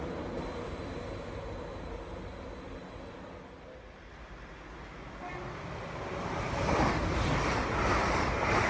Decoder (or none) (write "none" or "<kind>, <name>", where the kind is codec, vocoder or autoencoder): none